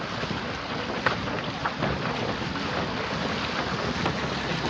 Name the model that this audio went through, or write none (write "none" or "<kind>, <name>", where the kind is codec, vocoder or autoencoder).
none